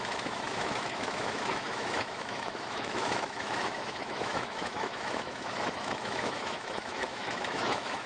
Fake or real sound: fake